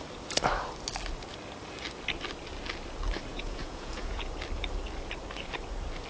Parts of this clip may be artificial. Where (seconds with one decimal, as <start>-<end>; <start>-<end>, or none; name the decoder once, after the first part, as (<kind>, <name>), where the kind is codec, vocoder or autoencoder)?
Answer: 3.3-4.2 (vocoder, Vocos)